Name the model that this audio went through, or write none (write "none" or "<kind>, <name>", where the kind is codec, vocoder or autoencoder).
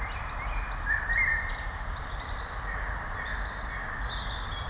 none